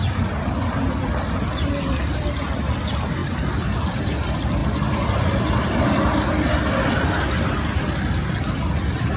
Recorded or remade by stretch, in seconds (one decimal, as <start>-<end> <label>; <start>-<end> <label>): 0.0-9.2 recorded